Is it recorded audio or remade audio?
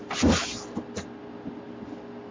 recorded